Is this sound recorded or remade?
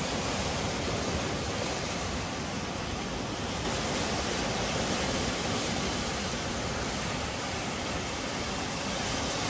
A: recorded